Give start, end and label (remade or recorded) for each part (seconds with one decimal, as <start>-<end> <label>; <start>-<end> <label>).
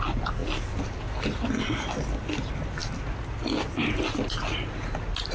0.0-5.3 recorded